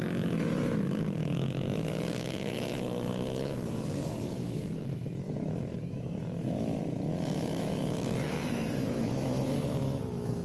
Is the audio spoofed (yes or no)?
yes